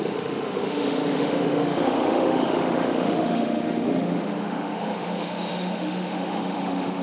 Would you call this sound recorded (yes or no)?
no